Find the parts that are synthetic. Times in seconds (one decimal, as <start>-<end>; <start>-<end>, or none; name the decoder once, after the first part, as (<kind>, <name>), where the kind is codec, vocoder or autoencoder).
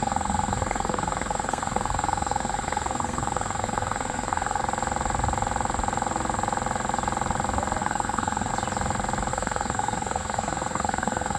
0.0-4.6 (codec, SNAC); 7.8-8.5; 9.3-11.4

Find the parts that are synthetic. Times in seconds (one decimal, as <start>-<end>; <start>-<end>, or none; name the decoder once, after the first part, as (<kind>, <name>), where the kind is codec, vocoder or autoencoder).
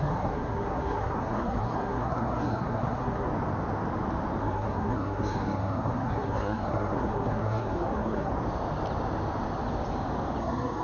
0.0-3.3 (codec, SNAC); 4.4-8.3; 10.4-10.8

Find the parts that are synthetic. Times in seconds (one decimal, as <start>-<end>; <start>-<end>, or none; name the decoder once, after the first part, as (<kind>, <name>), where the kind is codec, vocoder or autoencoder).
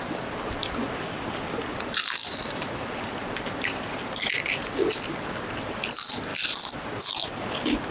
0.6-3.2 (vocoder, BigVGAN v2); 6.3-7.0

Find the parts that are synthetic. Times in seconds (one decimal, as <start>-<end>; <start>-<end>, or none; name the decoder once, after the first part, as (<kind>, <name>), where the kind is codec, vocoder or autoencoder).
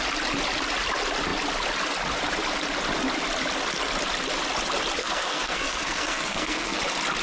5.0-6.8 (codec, SNAC)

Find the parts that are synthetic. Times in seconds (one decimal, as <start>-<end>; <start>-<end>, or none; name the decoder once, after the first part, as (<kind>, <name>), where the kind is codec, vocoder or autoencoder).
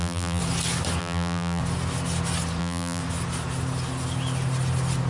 0.0-0.4 (vocoder, BigVGAN v2); 1.0-1.6; 2.6-3.0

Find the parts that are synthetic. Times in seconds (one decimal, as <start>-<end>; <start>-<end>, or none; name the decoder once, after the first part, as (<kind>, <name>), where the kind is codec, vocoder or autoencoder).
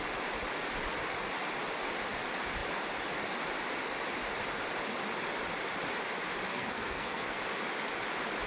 6.5-7.4 (codec, SNAC)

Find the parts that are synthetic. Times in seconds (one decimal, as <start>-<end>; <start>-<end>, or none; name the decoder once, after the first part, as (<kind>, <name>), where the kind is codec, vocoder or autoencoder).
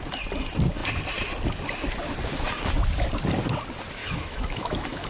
4.0-5.1 (autoencoder, DAC-VAE)